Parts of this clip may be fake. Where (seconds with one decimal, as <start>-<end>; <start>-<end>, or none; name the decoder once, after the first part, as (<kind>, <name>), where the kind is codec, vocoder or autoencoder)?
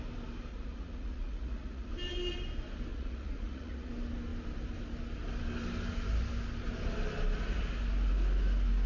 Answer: 0.5-1.9 (vocoder, Vocos); 2.9-3.9